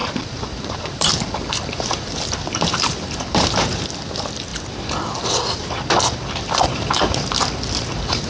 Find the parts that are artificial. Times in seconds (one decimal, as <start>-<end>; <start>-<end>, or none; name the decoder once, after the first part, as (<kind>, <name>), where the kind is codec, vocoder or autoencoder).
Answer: 0.0-3.7 (vocoder, BigVGAN v2)